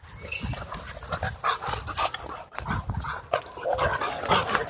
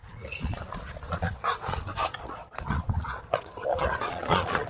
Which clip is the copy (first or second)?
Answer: second